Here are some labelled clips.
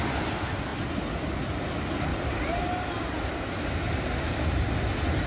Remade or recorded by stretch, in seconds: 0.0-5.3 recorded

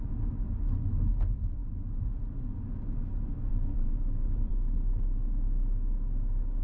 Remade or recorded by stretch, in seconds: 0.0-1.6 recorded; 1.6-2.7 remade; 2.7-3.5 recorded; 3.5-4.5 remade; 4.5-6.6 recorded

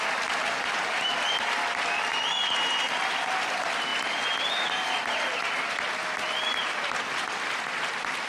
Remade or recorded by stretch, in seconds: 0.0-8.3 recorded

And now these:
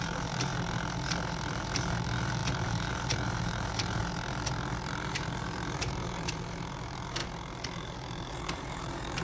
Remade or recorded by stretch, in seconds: 0.0-0.5 remade; 0.5-1.5 recorded; 1.5-4.0 remade; 4.0-4.9 recorded; 4.9-7.2 remade; 7.2-8.3 recorded; 8.3-9.2 remade